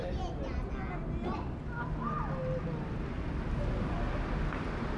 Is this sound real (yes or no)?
yes